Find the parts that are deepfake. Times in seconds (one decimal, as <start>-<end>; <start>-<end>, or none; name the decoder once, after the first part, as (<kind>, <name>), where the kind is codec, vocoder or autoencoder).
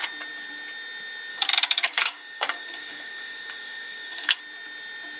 1.3-4.4 (codec, DAC)